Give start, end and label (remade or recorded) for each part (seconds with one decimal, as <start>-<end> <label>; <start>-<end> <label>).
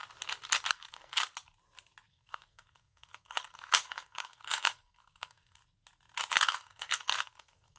0.0-0.7 recorded; 0.7-1.2 remade; 1.2-2.1 recorded; 2.1-5.6 remade; 5.6-6.3 recorded; 6.3-7.8 remade